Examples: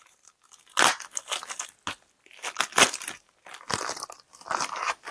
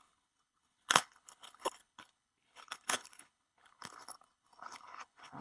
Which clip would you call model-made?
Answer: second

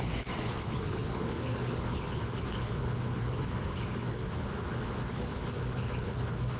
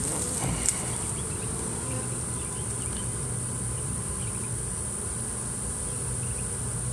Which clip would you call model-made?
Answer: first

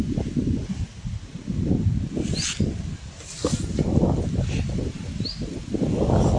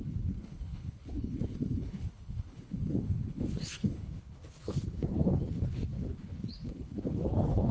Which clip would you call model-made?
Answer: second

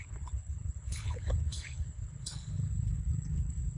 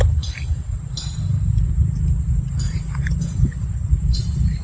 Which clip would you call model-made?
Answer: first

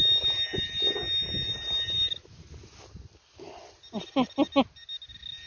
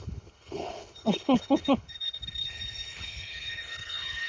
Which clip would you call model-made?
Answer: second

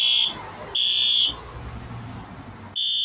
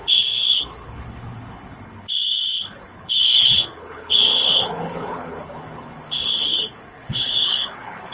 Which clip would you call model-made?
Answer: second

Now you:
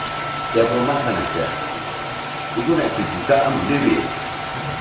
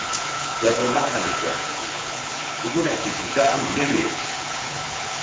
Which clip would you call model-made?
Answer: second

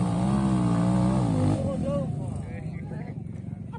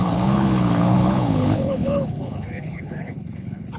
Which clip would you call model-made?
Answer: second